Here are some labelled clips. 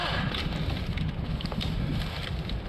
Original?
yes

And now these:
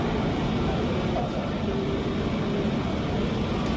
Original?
yes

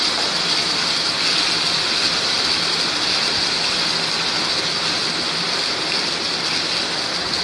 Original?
yes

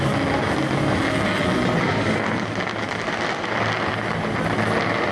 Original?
yes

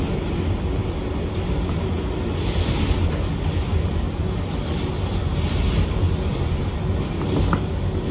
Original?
yes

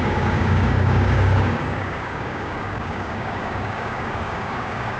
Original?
no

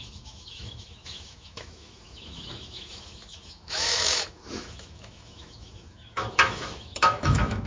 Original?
no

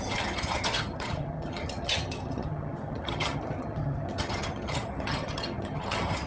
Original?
no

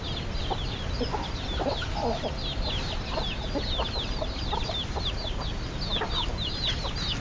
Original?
yes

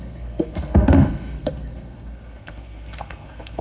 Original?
no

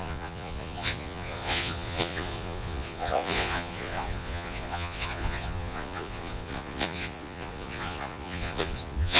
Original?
no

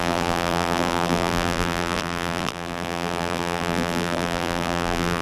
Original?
no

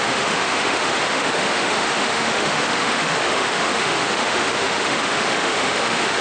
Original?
no